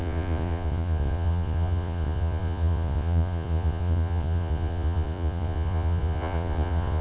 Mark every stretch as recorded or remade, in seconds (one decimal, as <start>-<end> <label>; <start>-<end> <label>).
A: 0.0-7.0 remade